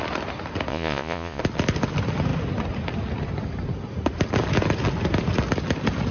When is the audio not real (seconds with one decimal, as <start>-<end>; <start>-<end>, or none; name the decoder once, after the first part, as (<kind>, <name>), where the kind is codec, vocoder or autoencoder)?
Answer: 0.7-1.4 (vocoder, Vocos)